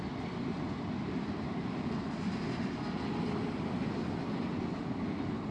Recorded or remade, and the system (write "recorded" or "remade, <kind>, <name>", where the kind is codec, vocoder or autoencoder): recorded